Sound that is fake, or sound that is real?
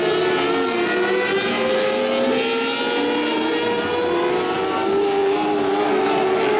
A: real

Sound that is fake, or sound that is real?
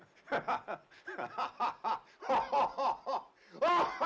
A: real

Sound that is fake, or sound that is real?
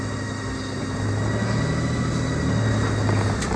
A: real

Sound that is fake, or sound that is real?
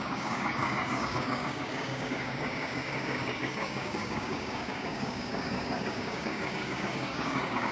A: fake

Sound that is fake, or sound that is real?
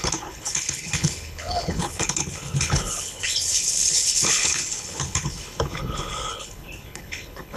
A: fake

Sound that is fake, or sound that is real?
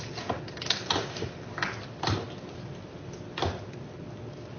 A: real